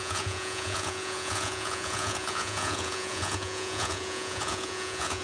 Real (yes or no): no